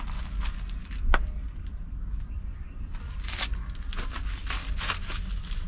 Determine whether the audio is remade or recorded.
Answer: recorded